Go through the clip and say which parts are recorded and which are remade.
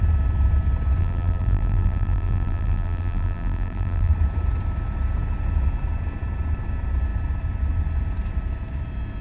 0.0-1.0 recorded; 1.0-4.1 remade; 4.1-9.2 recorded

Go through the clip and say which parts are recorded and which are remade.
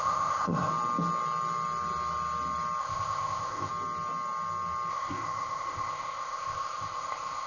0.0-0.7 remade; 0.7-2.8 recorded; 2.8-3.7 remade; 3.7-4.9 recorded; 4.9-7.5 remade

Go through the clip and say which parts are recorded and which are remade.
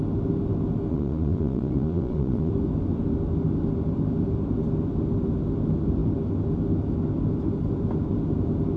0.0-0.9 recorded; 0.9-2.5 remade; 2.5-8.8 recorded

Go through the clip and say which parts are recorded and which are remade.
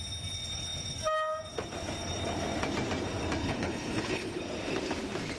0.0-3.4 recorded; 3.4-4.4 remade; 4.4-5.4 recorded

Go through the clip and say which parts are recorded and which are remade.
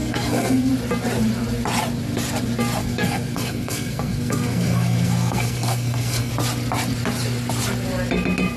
0.0-0.7 remade; 0.7-2.8 recorded; 2.8-6.3 remade; 6.3-8.6 recorded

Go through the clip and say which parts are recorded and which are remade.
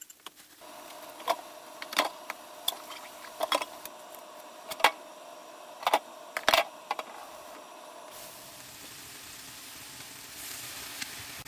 0.0-11.5 recorded